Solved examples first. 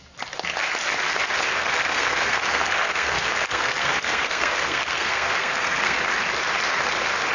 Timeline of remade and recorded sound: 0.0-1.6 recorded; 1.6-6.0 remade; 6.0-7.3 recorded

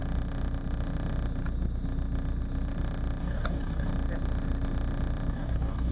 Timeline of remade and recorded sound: 0.0-3.2 recorded; 3.2-3.9 remade; 3.9-5.3 recorded; 5.3-5.9 remade

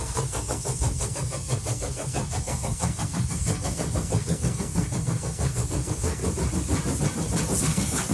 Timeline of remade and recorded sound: 0.0-6.2 remade; 6.2-7.6 recorded; 7.6-8.1 remade

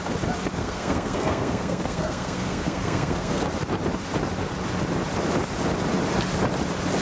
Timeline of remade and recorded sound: 0.0-0.6 recorded; 0.6-3.4 remade; 3.4-7.0 recorded

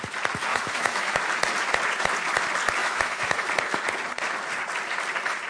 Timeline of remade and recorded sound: 0.0-0.5 recorded; 0.5-1.2 remade; 1.2-2.8 recorded; 2.8-3.5 remade; 3.5-5.5 recorded

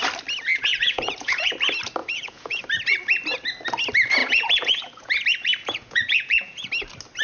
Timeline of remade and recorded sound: 0.0-0.5 recorded; 0.5-1.5 remade; 1.5-2.0 recorded; 2.0-2.6 remade; 2.6-4.2 recorded; 4.2-5.1 remade; 5.1-5.6 recorded; 5.6-6.7 remade; 6.7-7.2 recorded

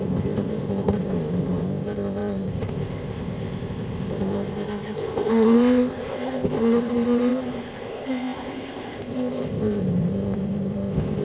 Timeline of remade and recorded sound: 0.0-11.2 remade